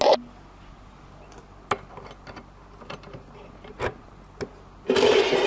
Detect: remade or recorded recorded